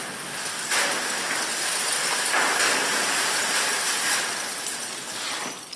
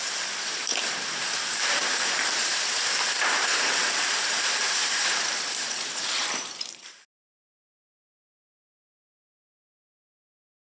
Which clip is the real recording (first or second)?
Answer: first